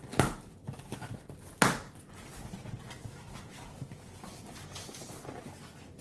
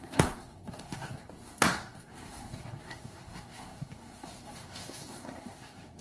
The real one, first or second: first